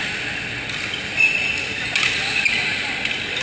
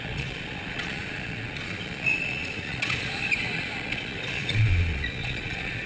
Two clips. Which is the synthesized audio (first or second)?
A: second